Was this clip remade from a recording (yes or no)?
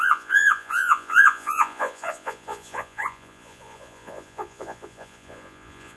yes